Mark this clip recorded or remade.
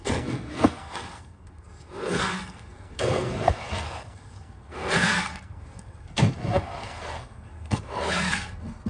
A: remade